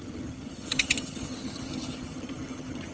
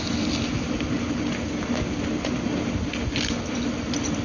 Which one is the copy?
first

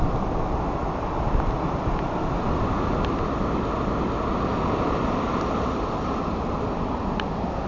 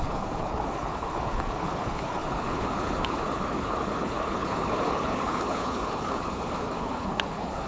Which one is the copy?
second